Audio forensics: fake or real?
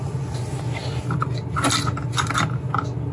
real